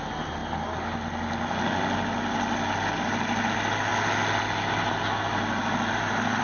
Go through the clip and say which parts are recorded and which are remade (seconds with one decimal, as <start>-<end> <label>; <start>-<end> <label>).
0.0-6.4 recorded